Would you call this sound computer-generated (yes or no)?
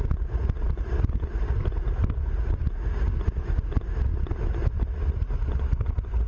no